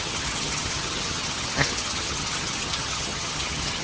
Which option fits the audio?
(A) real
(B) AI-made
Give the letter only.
B